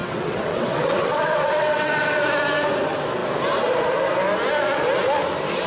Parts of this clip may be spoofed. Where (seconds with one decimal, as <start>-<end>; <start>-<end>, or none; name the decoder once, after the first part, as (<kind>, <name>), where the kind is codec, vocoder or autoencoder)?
0.0-2.2 (vocoder, WaveNeXt)